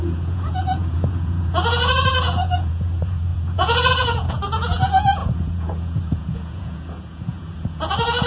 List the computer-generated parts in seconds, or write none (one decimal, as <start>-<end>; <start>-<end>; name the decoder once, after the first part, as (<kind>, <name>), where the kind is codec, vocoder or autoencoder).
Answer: 0.0-8.3 (vocoder, Vocos)